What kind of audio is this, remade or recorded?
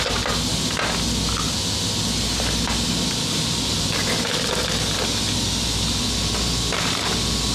recorded